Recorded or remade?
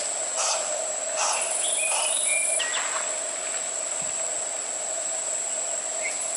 recorded